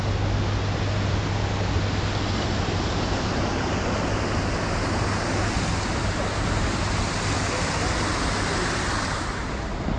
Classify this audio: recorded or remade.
recorded